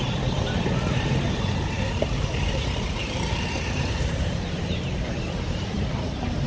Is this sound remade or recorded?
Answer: remade